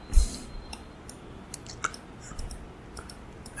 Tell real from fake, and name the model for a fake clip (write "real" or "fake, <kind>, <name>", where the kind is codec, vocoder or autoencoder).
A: real